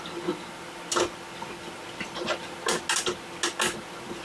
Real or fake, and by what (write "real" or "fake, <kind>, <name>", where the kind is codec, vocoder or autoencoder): real